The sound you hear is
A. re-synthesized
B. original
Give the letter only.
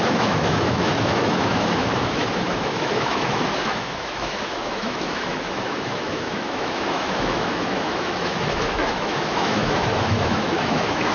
A